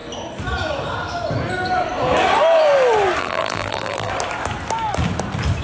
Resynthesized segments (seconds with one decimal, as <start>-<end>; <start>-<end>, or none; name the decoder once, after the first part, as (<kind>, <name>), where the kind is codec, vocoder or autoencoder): 3.2-4.1 (vocoder, BigVGAN v2)